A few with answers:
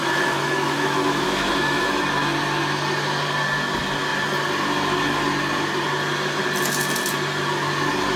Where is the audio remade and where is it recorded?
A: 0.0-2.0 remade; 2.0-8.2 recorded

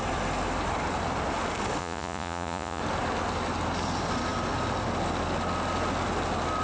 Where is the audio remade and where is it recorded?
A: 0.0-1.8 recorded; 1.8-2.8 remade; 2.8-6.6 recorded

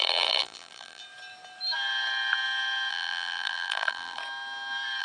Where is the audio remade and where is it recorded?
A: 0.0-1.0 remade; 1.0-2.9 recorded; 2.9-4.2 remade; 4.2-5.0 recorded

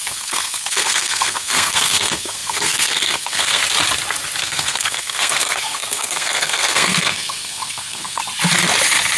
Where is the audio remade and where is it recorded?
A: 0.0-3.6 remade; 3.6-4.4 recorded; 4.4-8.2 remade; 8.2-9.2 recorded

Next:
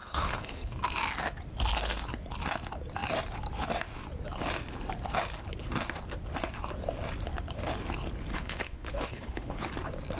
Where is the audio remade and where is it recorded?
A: 0.0-0.8 remade; 0.8-8.3 recorded; 8.3-9.7 remade; 9.7-10.2 recorded